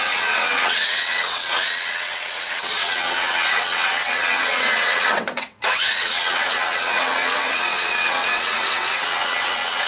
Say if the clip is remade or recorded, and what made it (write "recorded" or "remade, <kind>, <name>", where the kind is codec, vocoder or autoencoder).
remade, vocoder, WaveNeXt